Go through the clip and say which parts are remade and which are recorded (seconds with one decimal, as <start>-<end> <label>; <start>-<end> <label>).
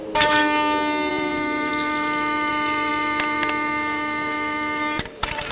0.0-1.1 recorded; 1.1-5.5 remade